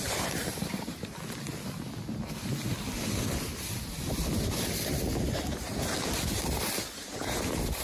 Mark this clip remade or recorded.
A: recorded